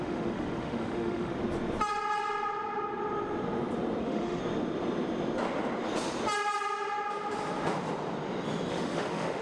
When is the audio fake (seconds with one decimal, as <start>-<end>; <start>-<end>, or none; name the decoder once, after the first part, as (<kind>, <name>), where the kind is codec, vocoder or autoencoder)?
0.0-1.3 (autoencoder, DAC-VAE); 4.0-4.4; 8.7-9.4